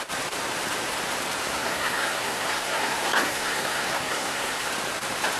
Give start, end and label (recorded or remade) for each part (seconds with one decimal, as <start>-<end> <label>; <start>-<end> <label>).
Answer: 0.0-1.5 recorded; 1.5-4.7 remade; 4.7-5.4 recorded